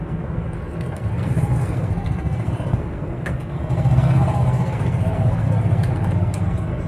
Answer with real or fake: fake